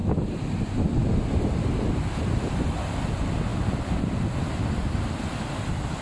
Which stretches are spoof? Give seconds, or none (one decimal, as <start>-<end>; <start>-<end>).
none